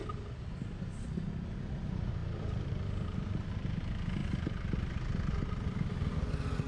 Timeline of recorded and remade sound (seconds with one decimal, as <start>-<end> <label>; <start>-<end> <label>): 0.0-1.7 remade; 1.7-2.2 recorded; 2.2-2.8 remade; 2.8-4.2 recorded; 4.2-5.9 remade; 5.9-6.7 recorded